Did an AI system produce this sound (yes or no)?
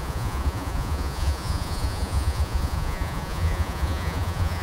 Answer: yes